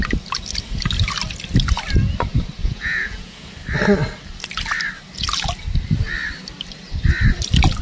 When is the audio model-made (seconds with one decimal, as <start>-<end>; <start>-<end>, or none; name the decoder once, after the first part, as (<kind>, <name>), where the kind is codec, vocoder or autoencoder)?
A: 2.6-3.5 (vocoder, Vocos)